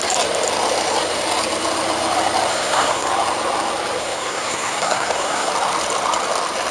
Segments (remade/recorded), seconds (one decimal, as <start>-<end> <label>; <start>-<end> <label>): 0.0-2.5 recorded; 2.5-3.1 remade; 3.1-4.0 recorded; 4.0-5.5 remade; 5.5-6.7 recorded